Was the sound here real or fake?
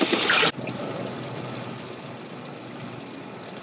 real